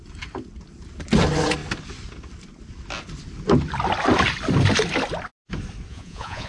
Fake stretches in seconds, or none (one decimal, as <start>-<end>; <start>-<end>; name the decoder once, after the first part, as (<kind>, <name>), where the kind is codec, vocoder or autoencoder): 5.9-6.5 (vocoder, Vocos)